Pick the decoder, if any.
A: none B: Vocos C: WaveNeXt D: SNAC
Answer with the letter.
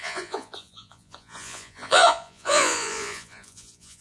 B